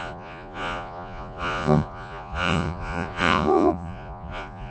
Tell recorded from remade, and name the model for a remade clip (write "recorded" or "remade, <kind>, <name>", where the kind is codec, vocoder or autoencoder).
remade, vocoder, Vocos